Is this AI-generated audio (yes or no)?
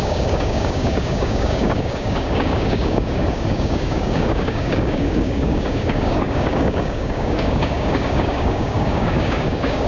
yes